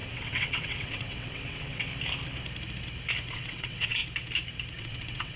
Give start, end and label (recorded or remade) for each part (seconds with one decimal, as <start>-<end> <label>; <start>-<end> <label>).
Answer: 0.0-1.9 remade; 1.9-3.3 recorded; 3.3-4.0 remade; 4.0-4.8 recorded; 4.8-5.4 remade